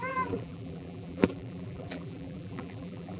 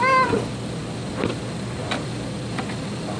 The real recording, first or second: second